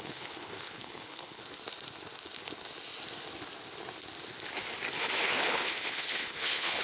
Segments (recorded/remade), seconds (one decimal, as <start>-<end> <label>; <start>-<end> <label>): 0.0-1.4 remade; 1.4-5.2 recorded; 5.2-6.8 remade